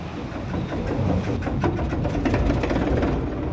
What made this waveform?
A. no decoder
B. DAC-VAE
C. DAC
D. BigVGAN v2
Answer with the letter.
A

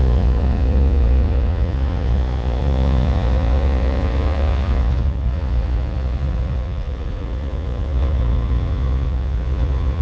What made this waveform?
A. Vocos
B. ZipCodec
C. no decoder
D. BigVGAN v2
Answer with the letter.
A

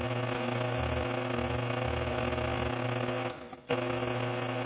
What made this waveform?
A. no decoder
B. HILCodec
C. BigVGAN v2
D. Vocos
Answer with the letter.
A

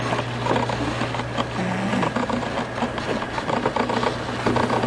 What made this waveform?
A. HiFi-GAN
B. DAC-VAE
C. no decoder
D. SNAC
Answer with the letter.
C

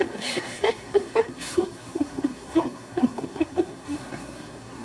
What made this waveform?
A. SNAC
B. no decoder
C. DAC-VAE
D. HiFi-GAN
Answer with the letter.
A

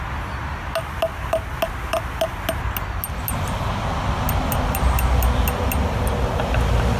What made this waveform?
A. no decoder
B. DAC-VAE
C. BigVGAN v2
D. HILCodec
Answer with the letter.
A